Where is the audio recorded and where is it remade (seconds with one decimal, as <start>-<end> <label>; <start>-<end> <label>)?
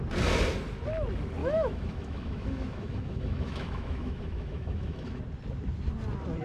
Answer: 0.0-1.4 recorded; 1.4-5.2 remade; 5.2-6.4 recorded